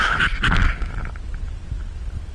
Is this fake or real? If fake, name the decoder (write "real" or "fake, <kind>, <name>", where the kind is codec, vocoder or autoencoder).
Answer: real